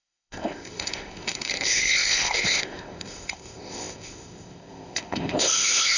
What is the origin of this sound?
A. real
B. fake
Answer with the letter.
B